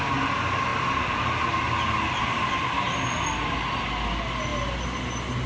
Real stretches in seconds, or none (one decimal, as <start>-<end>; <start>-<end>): 0.0-5.5